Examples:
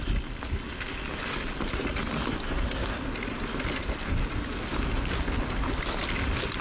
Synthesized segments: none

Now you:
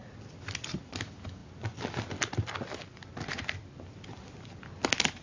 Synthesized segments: none

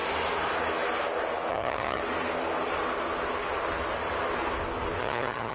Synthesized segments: 1.5-2.0 (vocoder, HiFi-GAN); 5.0-5.5

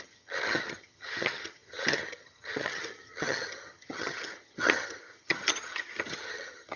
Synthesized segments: 0.0-6.8 (vocoder, HiFi-GAN)

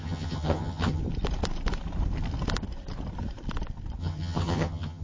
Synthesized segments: 0.0-1.0 (vocoder, HiFi-GAN); 4.0-5.0

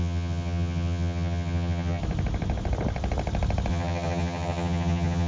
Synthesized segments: 0.0-2.0 (vocoder, HiFi-GAN); 3.7-5.3

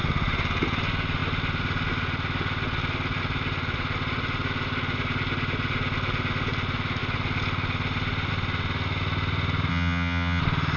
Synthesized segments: 9.7-10.4 (vocoder, HiFi-GAN)